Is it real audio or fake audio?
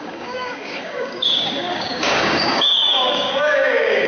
fake